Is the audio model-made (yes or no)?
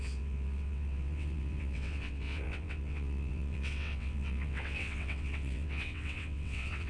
yes